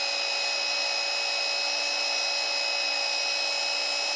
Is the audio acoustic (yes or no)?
yes